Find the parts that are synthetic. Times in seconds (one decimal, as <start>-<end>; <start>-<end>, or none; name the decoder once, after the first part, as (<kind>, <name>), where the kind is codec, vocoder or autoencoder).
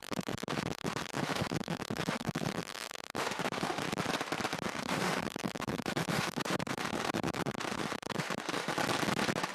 0.0-3.8 (autoencoder, DAC-VAE); 4.7-8.7